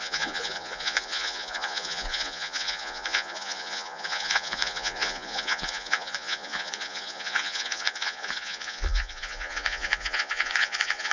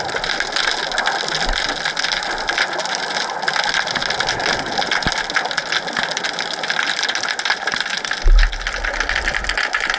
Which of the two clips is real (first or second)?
second